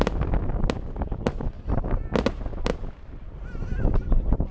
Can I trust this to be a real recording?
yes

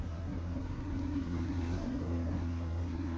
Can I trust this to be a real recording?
no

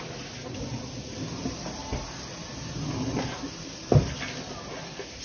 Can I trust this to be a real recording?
yes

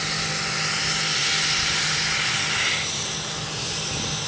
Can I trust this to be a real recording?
yes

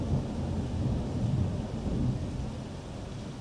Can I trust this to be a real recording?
yes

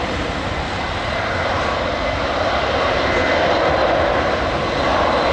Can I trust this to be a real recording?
yes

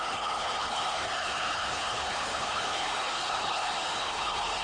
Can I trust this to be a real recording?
no